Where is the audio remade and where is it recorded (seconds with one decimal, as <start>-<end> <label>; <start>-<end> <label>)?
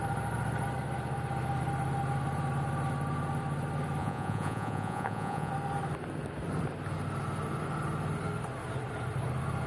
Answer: 0.0-4.0 recorded; 4.0-5.5 remade; 5.5-9.7 recorded